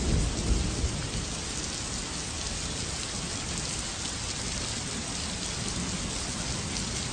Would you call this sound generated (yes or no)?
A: no